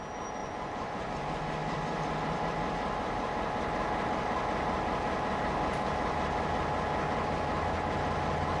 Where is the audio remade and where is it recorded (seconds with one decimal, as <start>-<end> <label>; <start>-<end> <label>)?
0.0-0.4 recorded; 0.4-1.1 remade; 1.1-8.6 recorded